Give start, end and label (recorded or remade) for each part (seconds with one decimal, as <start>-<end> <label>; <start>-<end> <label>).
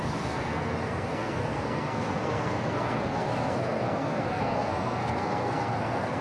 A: 0.0-6.2 remade